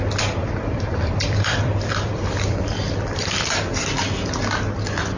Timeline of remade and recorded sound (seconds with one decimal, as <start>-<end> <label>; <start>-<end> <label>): 0.0-0.4 recorded; 0.4-3.5 remade; 3.5-5.2 recorded